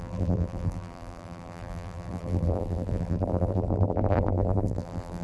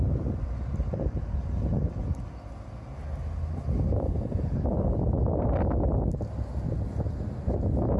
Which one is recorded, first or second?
second